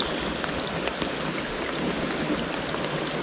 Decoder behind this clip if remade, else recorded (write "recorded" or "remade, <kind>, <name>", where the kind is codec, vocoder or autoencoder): recorded